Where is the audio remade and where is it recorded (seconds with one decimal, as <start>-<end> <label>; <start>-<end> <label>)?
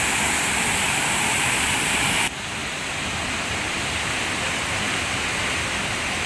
0.0-6.3 recorded